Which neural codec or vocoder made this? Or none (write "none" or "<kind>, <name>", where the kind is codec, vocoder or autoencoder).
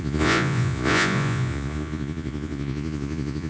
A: vocoder, Vocos